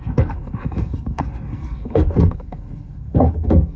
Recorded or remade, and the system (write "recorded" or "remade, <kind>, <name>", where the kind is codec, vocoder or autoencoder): remade, codec, SNAC